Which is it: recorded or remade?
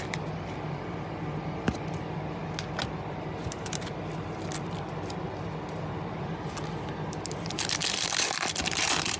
recorded